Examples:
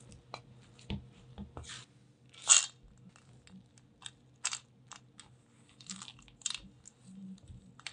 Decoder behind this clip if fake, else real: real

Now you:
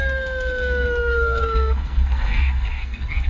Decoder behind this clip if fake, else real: fake, codec, SNAC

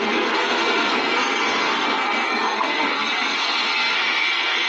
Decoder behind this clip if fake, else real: fake, codec, SNAC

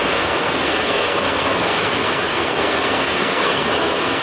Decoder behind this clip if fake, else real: fake, codec, SNAC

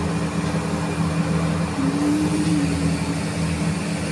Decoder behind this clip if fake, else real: real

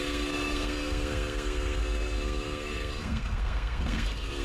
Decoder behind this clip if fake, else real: fake, codec, SNAC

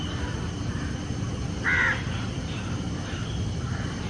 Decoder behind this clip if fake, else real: real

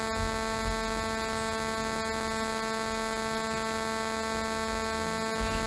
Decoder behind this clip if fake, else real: real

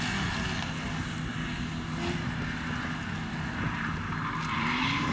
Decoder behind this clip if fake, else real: real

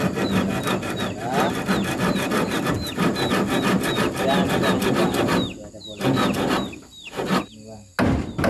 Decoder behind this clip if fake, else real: real